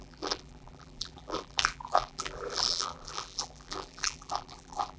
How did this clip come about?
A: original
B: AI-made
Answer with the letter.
B